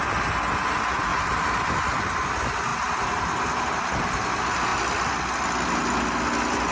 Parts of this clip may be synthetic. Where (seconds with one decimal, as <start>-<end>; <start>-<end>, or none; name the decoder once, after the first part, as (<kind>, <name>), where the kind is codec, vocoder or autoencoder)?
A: none